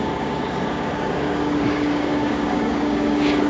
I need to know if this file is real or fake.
fake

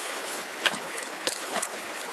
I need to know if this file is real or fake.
fake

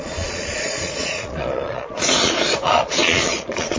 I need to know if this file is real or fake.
fake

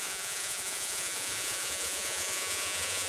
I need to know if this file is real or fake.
fake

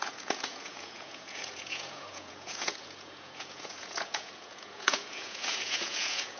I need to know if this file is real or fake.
fake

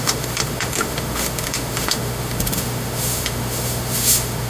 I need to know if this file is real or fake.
fake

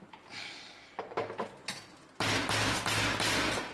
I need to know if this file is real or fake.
real